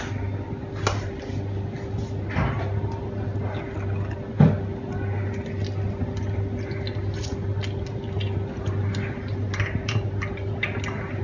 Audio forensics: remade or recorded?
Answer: recorded